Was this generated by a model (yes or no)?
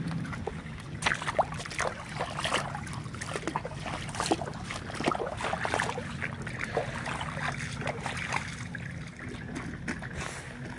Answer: no